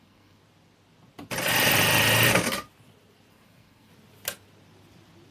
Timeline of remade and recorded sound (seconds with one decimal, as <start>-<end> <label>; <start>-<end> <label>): 0.0-0.4 remade; 0.4-3.3 recorded; 3.3-3.9 remade; 3.9-5.3 recorded